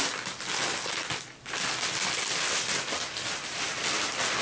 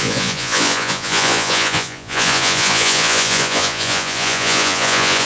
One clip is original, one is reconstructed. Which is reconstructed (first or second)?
second